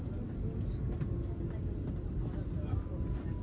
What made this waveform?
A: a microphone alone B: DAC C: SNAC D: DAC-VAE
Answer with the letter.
A